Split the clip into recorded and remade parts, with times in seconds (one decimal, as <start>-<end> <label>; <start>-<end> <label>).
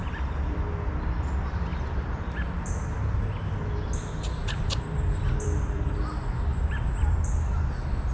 0.0-0.7 remade; 0.7-4.4 recorded; 4.4-6.0 remade; 6.0-6.5 recorded; 6.5-7.1 remade; 7.1-8.1 recorded